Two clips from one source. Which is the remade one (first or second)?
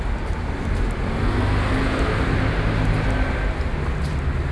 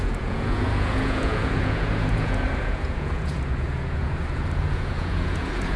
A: second